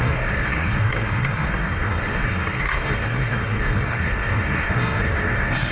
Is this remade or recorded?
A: remade